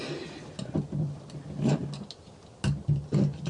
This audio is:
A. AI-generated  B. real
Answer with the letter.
B